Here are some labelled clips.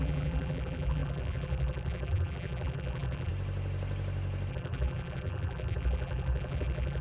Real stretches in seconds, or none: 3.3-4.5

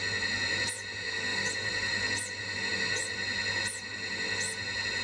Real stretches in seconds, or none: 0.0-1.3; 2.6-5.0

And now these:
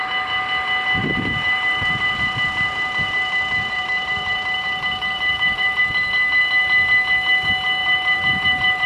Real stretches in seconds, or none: 0.0-1.0; 5.8-7.8

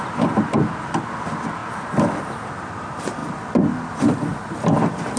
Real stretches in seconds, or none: 0.5-1.6; 2.3-3.2

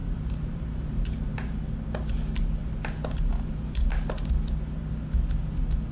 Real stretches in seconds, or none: 1.6-5.9

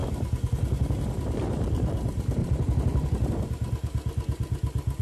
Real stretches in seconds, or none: 0.0-2.4; 3.3-5.0

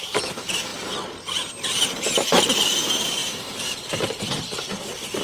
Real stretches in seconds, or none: 0.7-1.8

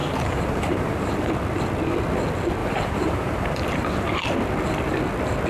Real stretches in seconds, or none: 1.3-2.6; 4.2-5.5